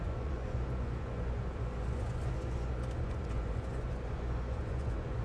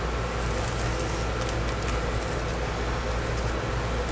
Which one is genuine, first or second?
second